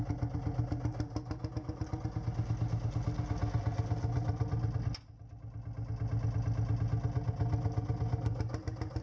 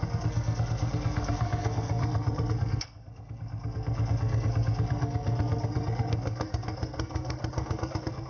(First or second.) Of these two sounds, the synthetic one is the second